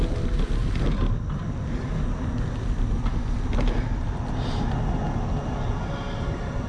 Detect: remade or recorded recorded